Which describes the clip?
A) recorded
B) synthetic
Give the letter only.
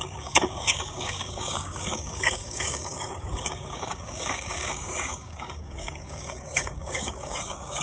B